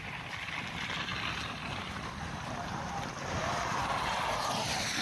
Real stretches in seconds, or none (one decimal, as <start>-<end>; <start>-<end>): 0.0-5.0

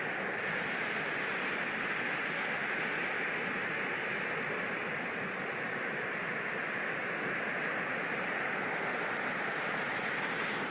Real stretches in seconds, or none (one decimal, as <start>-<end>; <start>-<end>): 0.0-10.7

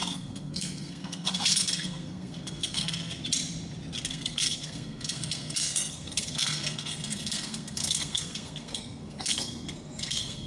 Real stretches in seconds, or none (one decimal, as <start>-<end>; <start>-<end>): 3.2-4.1

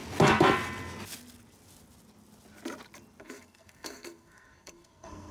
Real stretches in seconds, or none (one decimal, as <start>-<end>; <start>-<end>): 0.0-3.2

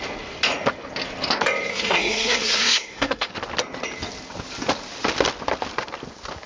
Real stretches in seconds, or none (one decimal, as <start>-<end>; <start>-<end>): 0.0-1.7; 3.3-6.5

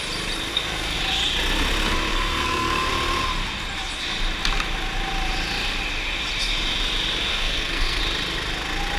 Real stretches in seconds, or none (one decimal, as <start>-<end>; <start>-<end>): 0.0-0.5; 1.0-2.1; 2.9-7.3; 8.0-9.0

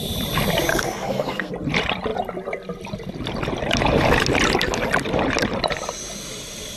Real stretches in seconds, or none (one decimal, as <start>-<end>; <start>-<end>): 0.0-0.7; 1.5-6.8

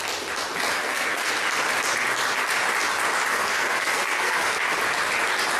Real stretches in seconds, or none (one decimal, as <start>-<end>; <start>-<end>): 0.0-0.7; 1.3-3.3; 4.6-5.6